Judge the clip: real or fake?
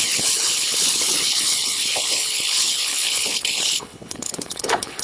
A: fake